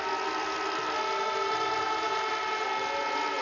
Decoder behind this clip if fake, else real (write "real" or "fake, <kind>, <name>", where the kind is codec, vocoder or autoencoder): real